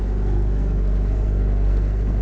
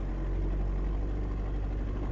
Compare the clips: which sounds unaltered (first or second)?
second